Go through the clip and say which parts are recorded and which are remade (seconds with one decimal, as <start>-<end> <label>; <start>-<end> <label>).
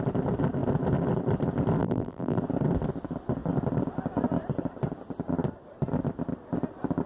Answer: 0.0-1.8 recorded; 1.8-2.4 remade; 2.4-7.1 recorded